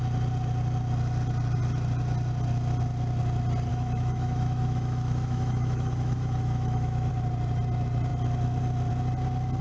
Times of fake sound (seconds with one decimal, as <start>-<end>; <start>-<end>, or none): 3.7-7.1